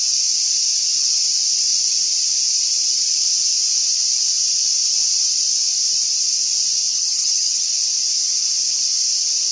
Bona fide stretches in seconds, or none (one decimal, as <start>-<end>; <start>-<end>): 0.0-6.9; 7.7-9.5